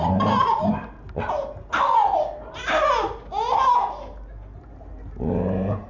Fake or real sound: real